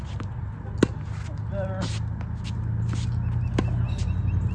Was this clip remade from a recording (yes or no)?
no